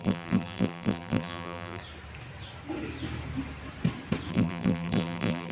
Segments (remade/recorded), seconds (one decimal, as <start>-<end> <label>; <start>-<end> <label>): 0.0-1.8 remade; 1.8-4.3 recorded; 4.3-5.5 remade